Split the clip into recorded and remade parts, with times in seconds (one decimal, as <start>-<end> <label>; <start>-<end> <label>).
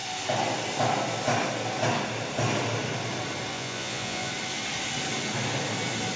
0.0-3.5 recorded; 3.5-4.3 remade; 4.3-6.2 recorded